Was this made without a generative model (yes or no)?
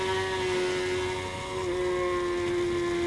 yes